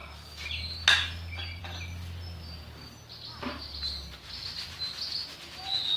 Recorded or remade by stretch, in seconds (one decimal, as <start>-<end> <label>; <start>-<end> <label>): 0.0-6.0 recorded